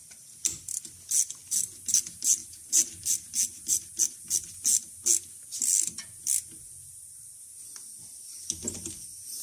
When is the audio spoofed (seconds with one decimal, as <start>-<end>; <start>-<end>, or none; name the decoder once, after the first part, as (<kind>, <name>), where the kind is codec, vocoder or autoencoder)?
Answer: none